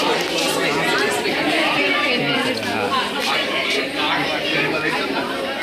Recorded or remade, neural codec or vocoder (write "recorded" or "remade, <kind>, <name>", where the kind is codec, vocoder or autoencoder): recorded